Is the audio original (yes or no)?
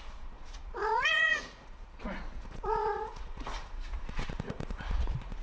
no